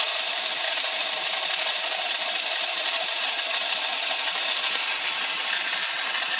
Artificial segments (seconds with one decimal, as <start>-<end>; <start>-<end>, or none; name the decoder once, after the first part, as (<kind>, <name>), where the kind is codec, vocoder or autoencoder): 1.0-3.0 (vocoder, BigVGAN v2)